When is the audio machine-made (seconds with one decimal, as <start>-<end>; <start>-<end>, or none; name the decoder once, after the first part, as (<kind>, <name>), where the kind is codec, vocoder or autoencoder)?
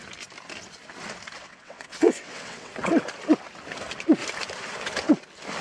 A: 1.4-2.7 (vocoder, WaveNeXt)